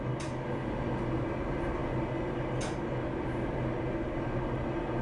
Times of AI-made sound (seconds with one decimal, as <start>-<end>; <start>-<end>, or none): none